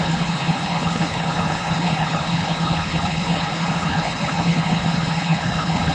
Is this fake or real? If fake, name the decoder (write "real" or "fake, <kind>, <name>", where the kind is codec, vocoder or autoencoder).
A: fake, codec, HILCodec